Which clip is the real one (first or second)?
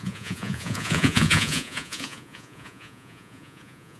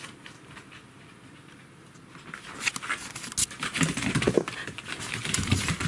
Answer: second